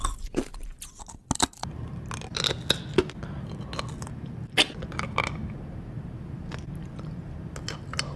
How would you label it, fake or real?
real